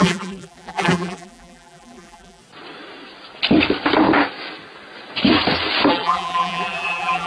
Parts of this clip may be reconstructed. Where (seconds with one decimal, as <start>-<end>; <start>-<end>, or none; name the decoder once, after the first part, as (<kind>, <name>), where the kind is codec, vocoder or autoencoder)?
0.0-2.4 (vocoder, BigVGAN v2); 5.9-7.3